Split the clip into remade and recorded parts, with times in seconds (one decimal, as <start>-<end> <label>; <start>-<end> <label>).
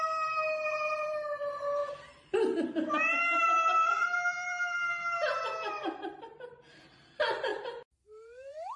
0.0-1.8 remade; 1.8-3.4 recorded; 3.4-7.5 remade; 7.5-8.0 recorded; 8.0-8.8 remade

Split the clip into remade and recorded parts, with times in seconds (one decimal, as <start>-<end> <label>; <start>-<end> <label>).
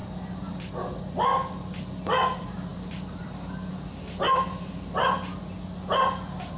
0.0-0.7 remade; 0.7-2.7 recorded; 2.7-5.1 remade; 5.1-6.6 recorded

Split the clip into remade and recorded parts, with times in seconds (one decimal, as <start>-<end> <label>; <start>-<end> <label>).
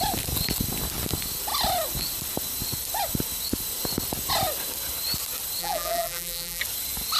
0.0-5.6 recorded; 5.6-6.6 remade; 6.6-7.2 recorded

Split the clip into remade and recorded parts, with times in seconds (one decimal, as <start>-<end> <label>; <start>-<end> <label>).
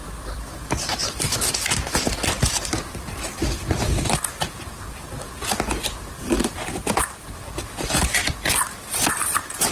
0.0-9.7 remade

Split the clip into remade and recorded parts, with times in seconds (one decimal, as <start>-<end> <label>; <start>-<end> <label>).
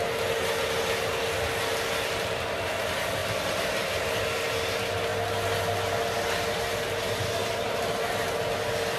0.0-9.0 recorded